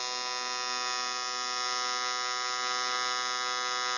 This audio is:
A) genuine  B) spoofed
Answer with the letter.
A